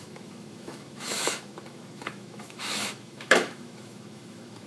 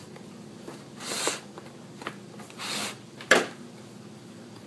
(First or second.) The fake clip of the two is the first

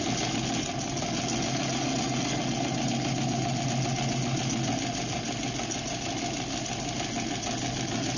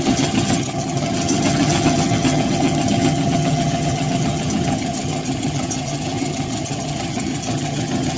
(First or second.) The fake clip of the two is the second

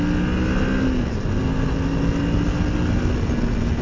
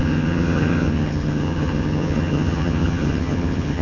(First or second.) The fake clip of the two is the second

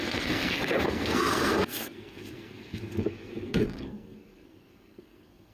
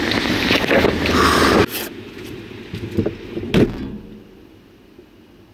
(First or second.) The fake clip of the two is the first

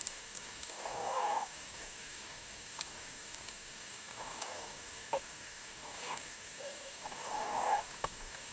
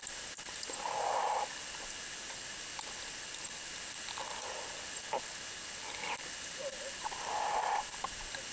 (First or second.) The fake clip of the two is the first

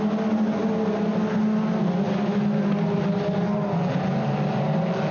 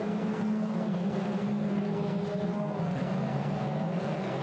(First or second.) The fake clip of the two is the second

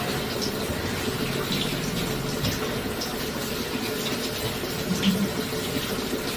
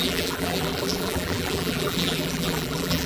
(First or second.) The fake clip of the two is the second